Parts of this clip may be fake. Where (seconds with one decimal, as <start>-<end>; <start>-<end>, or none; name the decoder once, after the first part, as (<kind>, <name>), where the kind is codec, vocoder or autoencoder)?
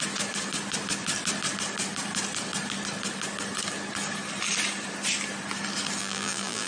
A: 6.0-6.7 (vocoder, BigVGAN v2)